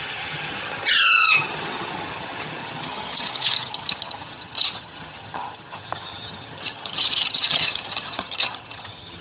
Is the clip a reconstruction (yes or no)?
yes